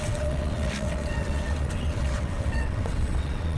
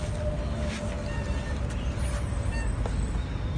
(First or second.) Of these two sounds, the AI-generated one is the first